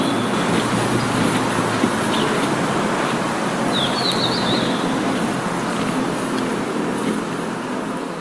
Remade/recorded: recorded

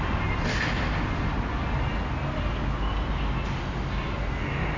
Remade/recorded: recorded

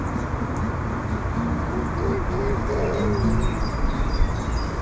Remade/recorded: recorded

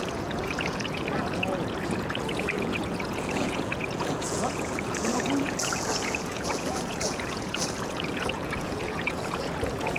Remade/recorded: remade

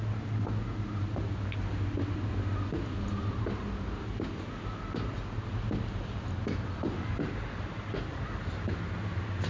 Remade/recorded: recorded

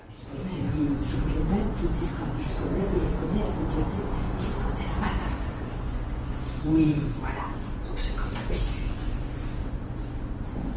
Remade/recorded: remade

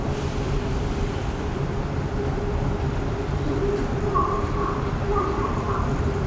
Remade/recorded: remade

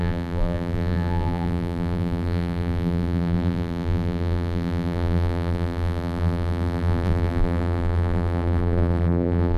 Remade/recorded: remade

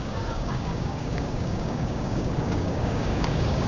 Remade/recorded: remade